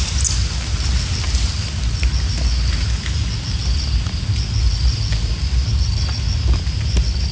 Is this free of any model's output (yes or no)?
yes